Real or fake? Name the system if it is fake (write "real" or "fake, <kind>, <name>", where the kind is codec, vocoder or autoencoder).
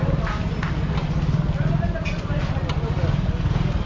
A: real